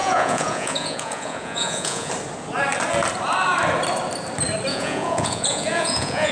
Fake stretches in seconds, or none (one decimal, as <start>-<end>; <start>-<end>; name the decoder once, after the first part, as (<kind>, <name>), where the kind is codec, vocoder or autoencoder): 0.0-2.1 (vocoder, Vocos); 4.7-6.3